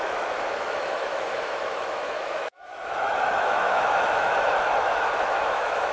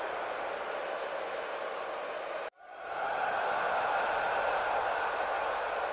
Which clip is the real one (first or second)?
second